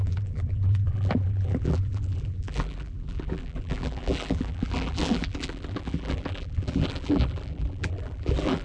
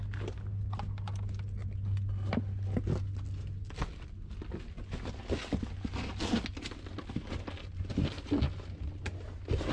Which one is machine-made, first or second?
first